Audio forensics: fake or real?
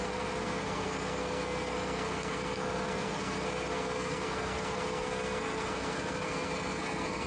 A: fake